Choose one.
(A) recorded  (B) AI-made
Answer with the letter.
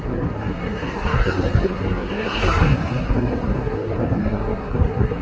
B